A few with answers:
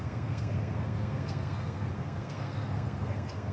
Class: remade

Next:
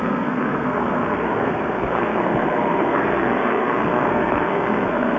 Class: remade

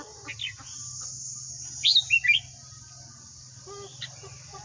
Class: recorded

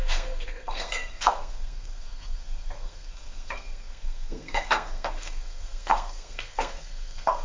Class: remade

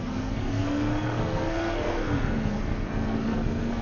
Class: remade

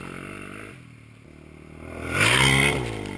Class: recorded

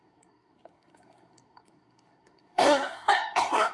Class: remade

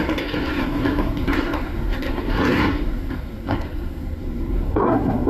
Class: remade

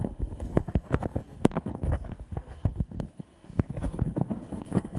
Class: remade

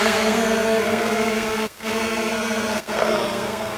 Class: remade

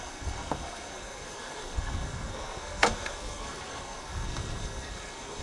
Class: remade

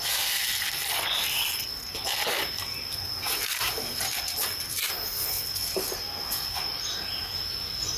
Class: recorded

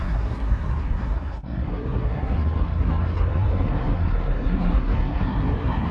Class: remade